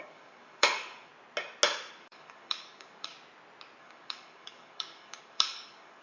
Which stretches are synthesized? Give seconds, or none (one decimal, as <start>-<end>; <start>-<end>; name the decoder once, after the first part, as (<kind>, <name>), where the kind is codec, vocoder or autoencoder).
0.0-1.1 (codec, DAC); 2.0-3.1; 3.8-6.0